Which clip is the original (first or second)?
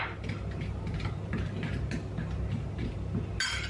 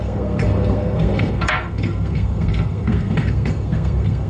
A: first